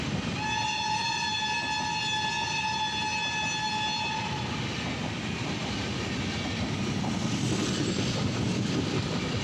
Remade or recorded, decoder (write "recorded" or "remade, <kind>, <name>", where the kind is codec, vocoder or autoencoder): recorded